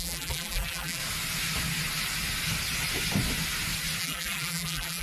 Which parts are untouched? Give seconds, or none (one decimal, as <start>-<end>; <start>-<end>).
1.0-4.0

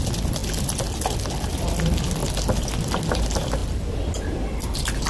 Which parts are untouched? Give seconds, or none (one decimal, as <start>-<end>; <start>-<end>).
0.0-5.1

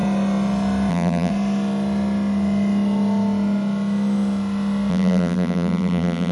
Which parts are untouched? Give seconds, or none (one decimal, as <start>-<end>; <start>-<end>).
0.0-0.9; 1.3-4.9